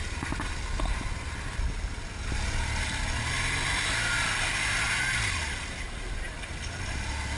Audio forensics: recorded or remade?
recorded